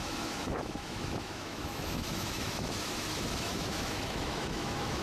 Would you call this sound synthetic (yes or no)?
yes